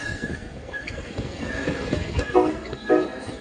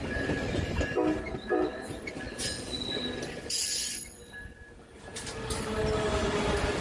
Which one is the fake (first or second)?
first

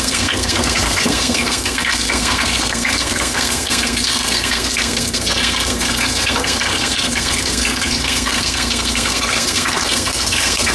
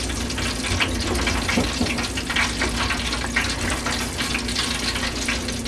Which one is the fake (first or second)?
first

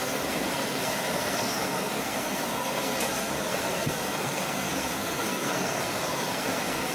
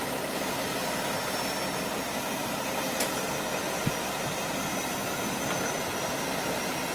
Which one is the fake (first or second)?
first